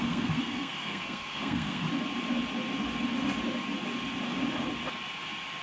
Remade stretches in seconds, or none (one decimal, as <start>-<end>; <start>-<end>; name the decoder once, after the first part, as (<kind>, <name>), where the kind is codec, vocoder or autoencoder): 0.0-1.8 (codec, SNAC)